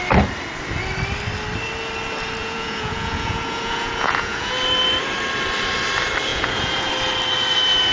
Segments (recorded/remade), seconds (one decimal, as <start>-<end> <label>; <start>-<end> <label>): 0.0-2.4 recorded; 2.4-4.5 remade; 4.5-6.3 recorded; 6.3-6.9 remade; 6.9-7.9 recorded